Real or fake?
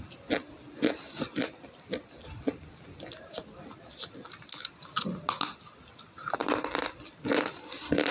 real